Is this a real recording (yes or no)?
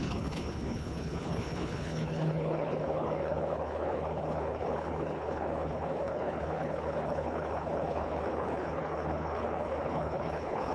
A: no